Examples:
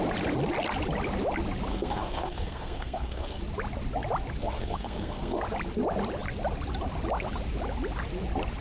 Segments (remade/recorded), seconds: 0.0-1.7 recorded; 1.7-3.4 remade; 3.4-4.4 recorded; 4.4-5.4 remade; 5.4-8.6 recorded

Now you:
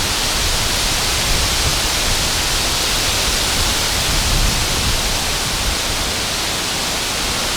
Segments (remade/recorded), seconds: 0.0-1.7 recorded; 1.7-4.1 remade; 4.1-4.6 recorded; 4.6-6.4 remade; 6.4-7.6 recorded

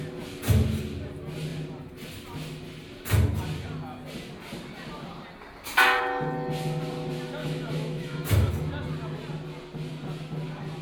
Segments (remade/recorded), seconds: 0.0-7.4 recorded; 7.4-8.5 remade; 8.5-10.8 recorded

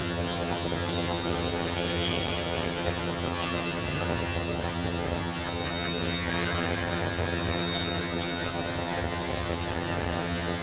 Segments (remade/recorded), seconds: 0.0-10.6 remade

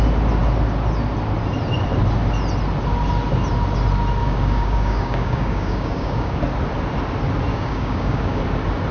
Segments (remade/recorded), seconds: 0.0-4.2 recorded; 4.2-6.4 remade; 6.4-7.5 recorded; 7.5-8.4 remade; 8.4-8.9 recorded

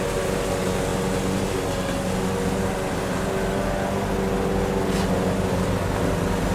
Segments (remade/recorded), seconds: 0.0-6.5 recorded

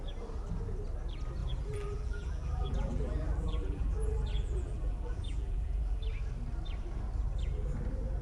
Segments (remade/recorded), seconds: 0.0-1.4 recorded; 1.4-6.1 remade; 6.1-8.2 recorded